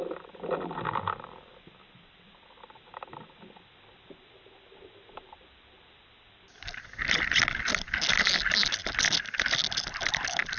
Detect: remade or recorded recorded